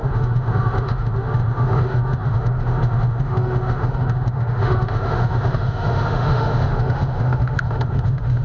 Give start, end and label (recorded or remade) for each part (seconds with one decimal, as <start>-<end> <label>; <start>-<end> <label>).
0.0-8.4 remade